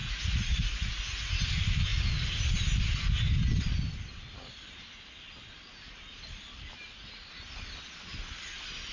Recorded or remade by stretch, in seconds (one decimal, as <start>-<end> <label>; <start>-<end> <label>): 0.0-1.3 remade; 1.3-8.9 recorded